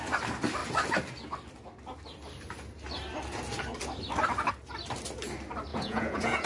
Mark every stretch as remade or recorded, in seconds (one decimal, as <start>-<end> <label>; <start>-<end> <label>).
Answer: 0.0-5.7 recorded; 5.7-6.5 remade